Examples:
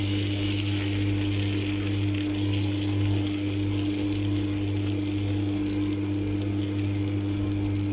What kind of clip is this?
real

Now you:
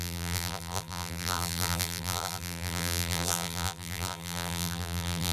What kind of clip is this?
fake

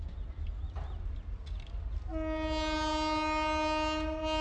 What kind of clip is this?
real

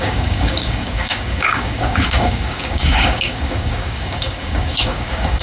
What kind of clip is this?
fake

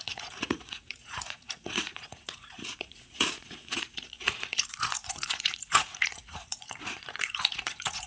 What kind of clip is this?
fake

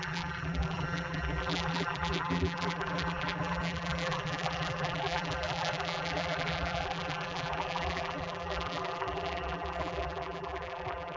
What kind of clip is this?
fake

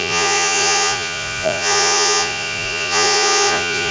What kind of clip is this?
fake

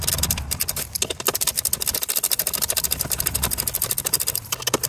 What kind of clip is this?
real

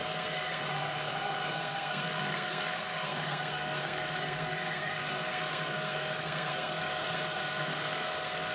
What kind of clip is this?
fake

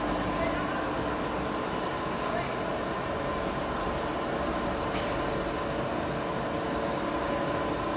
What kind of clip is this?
real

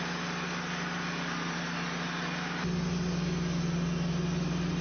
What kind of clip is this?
real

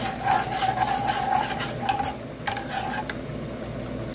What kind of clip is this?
real